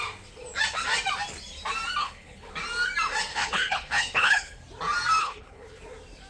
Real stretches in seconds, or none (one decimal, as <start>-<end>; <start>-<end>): 0.0-2.0; 2.5-3.3; 4.6-5.2; 5.8-6.3